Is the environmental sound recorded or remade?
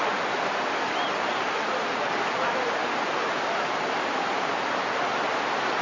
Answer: recorded